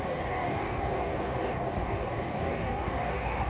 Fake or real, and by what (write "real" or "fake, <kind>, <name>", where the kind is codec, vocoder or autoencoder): fake, codec, DAC